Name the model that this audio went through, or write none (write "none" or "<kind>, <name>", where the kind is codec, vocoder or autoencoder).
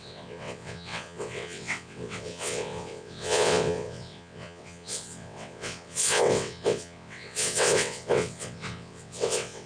vocoder, WaveNeXt